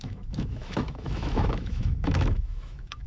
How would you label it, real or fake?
fake